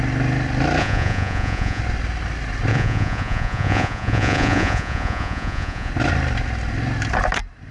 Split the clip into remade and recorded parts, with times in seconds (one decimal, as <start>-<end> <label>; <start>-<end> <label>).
0.0-0.8 recorded; 0.8-1.8 remade; 1.8-2.7 recorded; 2.7-5.9 remade; 5.9-7.7 recorded